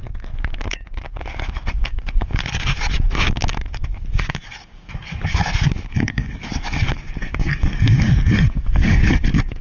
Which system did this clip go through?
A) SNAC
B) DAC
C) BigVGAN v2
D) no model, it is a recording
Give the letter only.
B